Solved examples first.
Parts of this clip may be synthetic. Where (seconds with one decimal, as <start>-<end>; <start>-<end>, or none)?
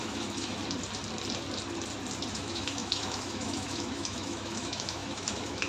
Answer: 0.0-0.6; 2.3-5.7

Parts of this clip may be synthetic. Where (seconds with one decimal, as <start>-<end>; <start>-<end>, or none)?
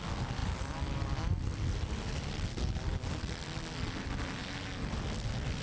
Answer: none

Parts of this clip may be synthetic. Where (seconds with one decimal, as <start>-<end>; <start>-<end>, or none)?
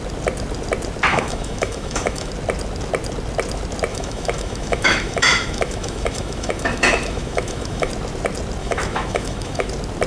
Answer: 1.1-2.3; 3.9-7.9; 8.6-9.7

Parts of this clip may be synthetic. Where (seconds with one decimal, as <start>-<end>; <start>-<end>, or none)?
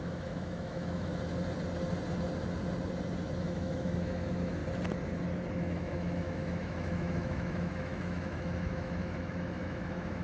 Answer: 0.0-1.1; 3.4-4.6; 5.6-10.2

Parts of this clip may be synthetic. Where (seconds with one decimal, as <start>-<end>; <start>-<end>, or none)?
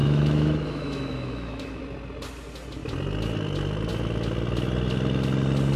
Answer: 0.0-1.8